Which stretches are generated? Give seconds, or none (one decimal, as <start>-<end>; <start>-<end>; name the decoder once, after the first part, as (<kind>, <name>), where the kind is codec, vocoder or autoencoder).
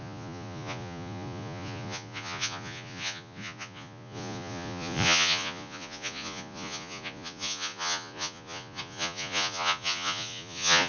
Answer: 0.0-10.9 (vocoder, Vocos)